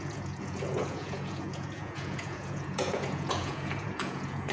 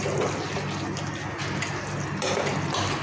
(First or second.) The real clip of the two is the second